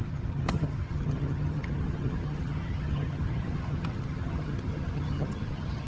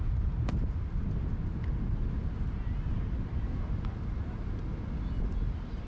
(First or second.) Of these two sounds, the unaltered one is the second